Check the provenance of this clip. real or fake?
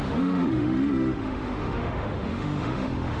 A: fake